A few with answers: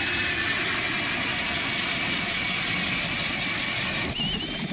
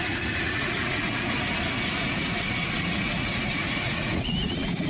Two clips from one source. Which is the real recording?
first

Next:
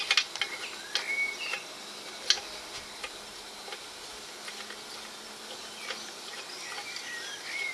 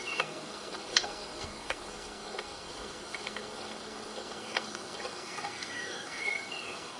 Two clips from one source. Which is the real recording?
first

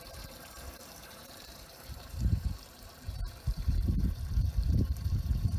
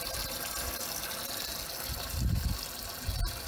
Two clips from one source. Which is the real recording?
second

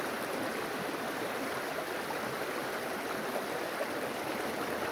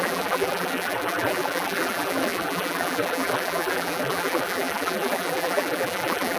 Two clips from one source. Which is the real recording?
first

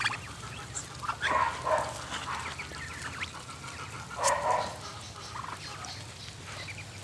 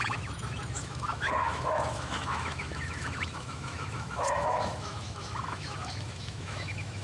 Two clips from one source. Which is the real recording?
first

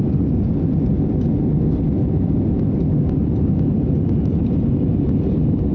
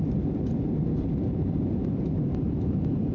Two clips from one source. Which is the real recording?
first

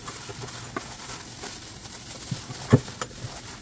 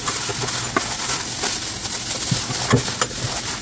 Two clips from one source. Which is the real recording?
second